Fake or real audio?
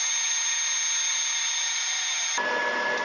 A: real